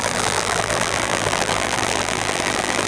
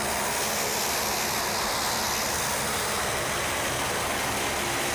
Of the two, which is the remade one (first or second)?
first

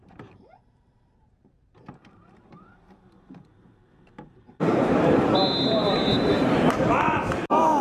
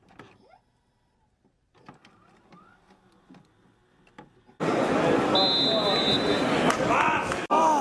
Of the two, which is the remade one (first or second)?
first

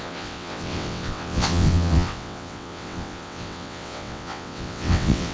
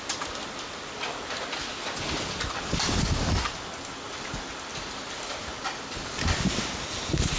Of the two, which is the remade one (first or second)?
first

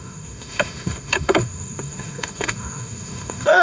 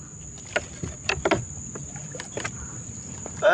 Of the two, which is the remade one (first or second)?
first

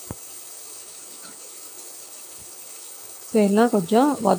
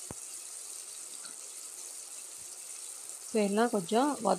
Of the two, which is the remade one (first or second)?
first